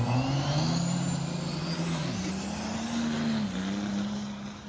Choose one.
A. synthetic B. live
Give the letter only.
B